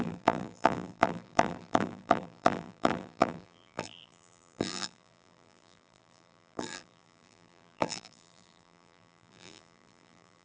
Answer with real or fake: fake